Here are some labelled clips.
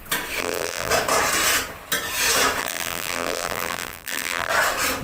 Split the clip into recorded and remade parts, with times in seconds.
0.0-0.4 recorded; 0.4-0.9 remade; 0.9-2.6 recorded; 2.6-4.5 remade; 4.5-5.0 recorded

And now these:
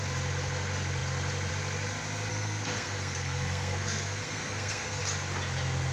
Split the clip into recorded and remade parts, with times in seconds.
0.0-2.3 recorded; 2.3-5.0 remade; 5.0-5.9 recorded

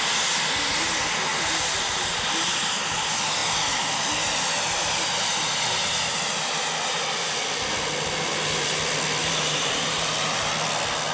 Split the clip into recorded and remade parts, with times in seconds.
0.0-1.3 recorded; 1.3-2.7 remade; 2.7-9.2 recorded; 9.2-10.5 remade; 10.5-11.1 recorded

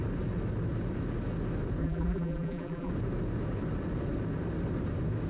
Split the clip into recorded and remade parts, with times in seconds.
0.0-1.8 recorded; 1.8-2.9 remade; 2.9-5.3 recorded

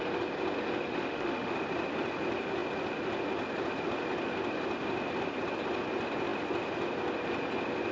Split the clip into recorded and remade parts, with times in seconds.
0.0-0.9 recorded; 0.9-1.6 remade; 1.6-7.9 recorded

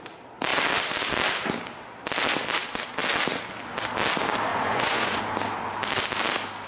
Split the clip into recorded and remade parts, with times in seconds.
0.0-4.5 recorded; 4.5-5.2 remade; 5.2-6.7 recorded

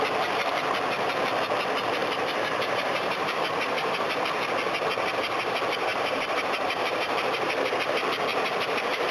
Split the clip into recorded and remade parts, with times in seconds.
0.0-2.0 recorded; 2.0-4.2 remade; 4.2-5.9 recorded; 5.9-7.7 remade; 7.7-8.3 recorded; 8.3-9.1 remade

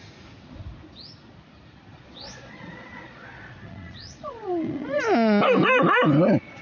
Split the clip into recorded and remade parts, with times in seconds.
0.0-1.9 recorded; 1.9-5.0 remade; 5.0-6.6 recorded